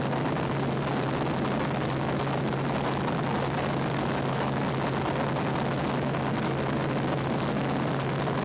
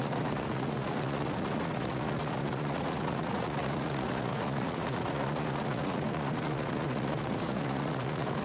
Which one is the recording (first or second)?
first